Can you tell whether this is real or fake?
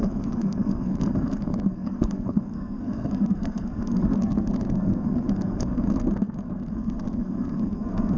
fake